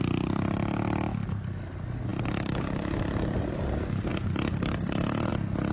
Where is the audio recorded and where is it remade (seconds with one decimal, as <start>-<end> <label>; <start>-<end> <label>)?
0.0-4.1 recorded; 4.1-5.3 remade; 5.3-5.7 recorded